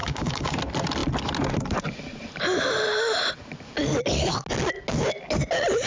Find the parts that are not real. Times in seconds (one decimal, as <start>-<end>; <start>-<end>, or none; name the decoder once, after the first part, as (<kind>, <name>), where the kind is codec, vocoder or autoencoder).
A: 0.0-0.6 (codec, DAC)